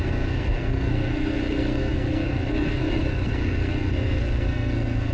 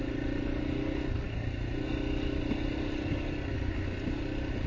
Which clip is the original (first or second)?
second